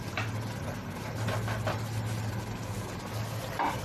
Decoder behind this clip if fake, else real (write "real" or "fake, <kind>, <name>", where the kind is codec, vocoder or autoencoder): real